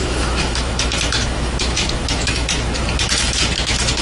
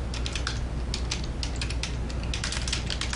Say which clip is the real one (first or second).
second